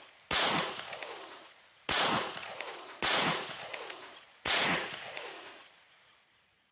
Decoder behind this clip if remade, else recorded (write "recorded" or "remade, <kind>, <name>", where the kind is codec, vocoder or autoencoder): remade, vocoder, Vocos